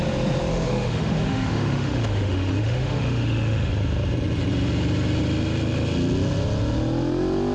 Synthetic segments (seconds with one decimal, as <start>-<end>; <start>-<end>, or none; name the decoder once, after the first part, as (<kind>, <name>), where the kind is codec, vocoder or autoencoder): 0.5-3.7 (autoencoder, DAC-VAE)